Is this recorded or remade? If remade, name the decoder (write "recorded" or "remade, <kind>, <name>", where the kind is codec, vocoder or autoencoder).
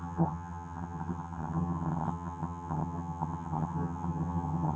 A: remade, vocoder, HiFi-GAN